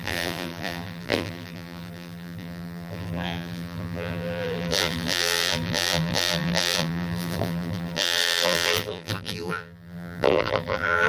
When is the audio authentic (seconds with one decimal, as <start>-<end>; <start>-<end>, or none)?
none